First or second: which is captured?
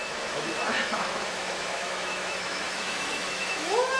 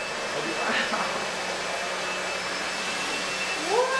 second